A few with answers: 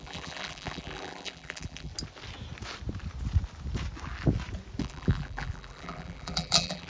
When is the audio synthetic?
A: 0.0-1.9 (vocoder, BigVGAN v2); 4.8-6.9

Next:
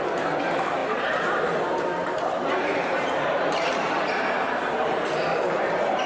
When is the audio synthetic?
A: 2.0-6.1 (vocoder, BigVGAN v2)

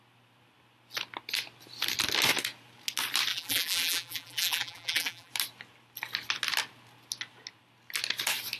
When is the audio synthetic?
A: 3.3-5.3 (vocoder, BigVGAN v2)